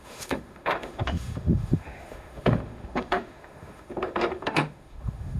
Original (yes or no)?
no